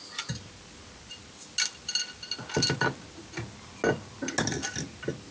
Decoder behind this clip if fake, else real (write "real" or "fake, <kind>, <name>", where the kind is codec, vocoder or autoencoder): real